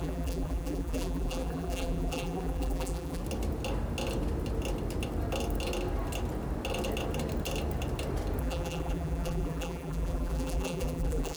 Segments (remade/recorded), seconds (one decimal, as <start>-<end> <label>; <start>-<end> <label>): 0.0-3.2 remade; 3.2-8.4 recorded; 8.4-11.4 remade